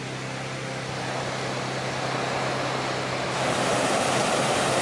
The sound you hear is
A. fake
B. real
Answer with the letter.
B